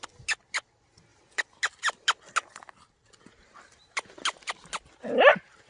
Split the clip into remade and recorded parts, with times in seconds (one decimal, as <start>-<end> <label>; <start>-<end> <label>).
0.0-5.7 recorded